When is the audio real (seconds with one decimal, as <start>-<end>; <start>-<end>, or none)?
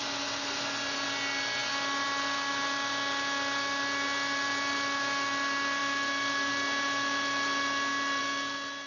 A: 0.0-8.9